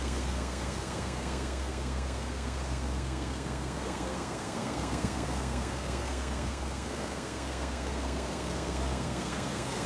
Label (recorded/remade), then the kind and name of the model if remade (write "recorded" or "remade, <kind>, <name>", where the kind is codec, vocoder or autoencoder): remade, codec, SNAC